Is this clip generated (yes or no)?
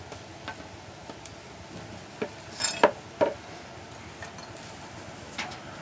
no